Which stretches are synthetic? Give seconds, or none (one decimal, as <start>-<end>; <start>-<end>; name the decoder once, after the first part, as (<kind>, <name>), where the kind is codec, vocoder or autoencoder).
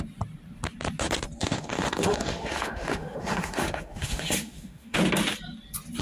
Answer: 1.4-5.0 (autoencoder, DAC-VAE)